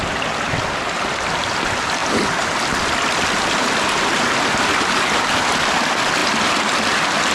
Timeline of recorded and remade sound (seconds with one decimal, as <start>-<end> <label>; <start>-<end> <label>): 0.0-7.3 recorded